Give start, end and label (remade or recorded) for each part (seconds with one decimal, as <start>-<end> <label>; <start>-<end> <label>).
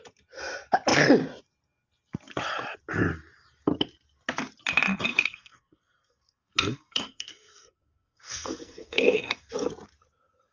0.0-5.1 recorded; 5.1-9.5 remade; 9.5-10.5 recorded